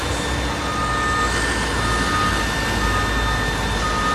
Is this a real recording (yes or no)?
yes